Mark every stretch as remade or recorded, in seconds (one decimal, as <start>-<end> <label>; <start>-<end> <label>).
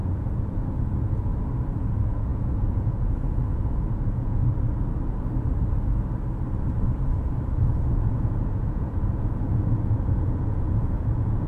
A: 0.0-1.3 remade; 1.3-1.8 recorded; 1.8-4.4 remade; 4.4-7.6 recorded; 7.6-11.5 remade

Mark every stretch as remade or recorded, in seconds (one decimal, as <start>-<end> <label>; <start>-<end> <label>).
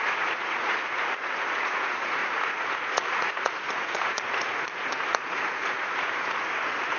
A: 0.0-7.0 remade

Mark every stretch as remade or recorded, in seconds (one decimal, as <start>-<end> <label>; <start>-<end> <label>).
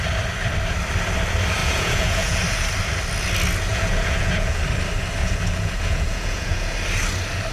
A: 0.0-1.6 recorded; 1.6-2.4 remade; 2.4-3.7 recorded; 3.7-4.6 remade; 4.6-5.2 recorded; 5.2-6.7 remade; 6.7-7.5 recorded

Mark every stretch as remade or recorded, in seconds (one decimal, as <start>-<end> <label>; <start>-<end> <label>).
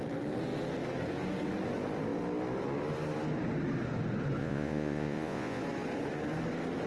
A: 0.0-4.4 recorded; 4.4-5.6 remade; 5.6-6.9 recorded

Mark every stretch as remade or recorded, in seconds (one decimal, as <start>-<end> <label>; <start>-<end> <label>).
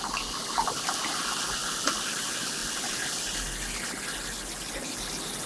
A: 0.0-5.5 recorded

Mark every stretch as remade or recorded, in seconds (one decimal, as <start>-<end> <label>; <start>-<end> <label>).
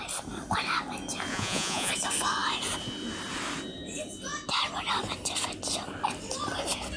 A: 0.0-1.3 recorded; 1.3-1.9 remade; 1.9-7.0 recorded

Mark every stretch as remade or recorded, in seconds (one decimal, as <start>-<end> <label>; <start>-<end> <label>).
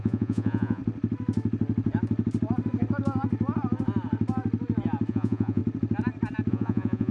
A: 0.0-0.8 remade; 0.8-5.1 recorded; 5.1-5.6 remade; 5.6-6.5 recorded; 6.5-7.1 remade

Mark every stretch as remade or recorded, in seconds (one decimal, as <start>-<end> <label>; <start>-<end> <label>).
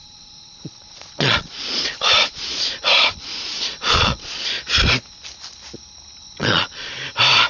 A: 0.0-4.5 remade; 4.5-6.2 recorded; 6.2-7.0 remade; 7.0-7.5 recorded